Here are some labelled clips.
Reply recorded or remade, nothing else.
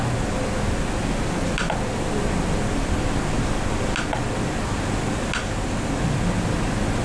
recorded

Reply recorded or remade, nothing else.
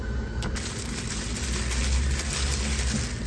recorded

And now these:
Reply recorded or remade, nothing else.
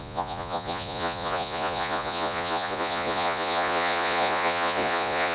remade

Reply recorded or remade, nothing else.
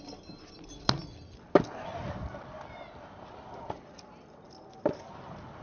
recorded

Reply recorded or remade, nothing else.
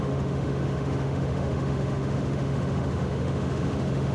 remade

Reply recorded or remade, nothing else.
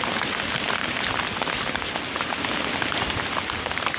recorded